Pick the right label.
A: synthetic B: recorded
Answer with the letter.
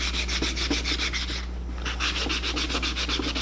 B